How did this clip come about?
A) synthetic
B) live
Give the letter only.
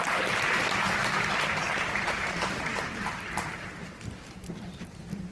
A